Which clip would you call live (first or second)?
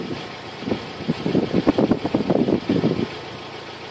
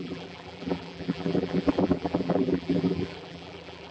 first